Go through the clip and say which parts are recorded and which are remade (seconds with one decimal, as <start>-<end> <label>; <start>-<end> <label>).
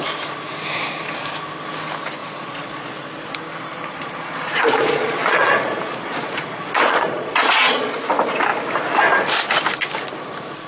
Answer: 0.0-2.2 recorded; 2.2-2.9 remade; 2.9-3.7 recorded; 3.7-8.0 remade; 8.0-10.7 recorded